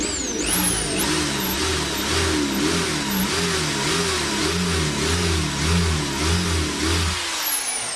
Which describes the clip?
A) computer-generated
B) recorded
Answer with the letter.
B